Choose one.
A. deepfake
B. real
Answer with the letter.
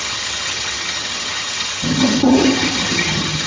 A